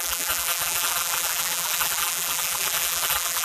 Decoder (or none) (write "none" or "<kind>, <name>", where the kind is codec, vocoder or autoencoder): vocoder, BigVGAN v2